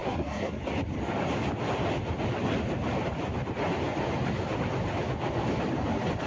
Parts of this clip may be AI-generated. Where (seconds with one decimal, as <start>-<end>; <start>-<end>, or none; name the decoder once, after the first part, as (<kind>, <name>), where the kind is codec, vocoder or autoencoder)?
0.0-0.6 (codec, SNAC)